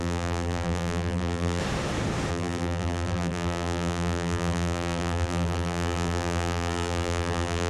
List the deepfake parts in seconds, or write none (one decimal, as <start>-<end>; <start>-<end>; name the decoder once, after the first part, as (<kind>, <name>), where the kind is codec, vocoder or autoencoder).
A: 0.0-1.6 (vocoder, BigVGAN v2); 2.3-7.7